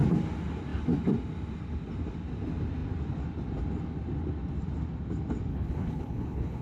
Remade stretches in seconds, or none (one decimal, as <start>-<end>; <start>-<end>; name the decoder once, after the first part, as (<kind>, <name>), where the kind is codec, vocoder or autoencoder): 5.5-6.6 (codec, HILCodec)